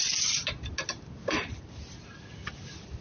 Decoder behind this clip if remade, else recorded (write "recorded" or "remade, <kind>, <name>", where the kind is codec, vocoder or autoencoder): recorded